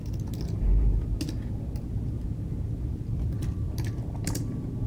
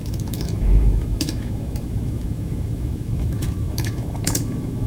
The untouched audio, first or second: first